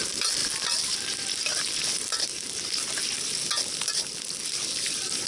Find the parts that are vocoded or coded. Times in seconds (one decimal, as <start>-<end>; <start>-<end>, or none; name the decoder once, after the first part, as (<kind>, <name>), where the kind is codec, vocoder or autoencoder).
none